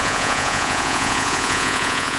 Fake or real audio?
fake